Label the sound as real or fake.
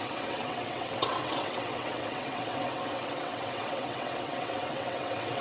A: fake